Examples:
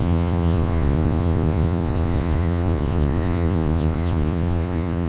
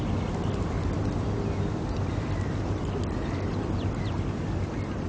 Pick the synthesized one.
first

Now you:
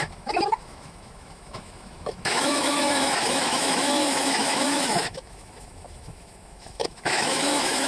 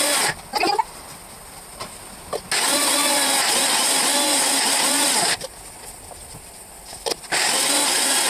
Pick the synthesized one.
first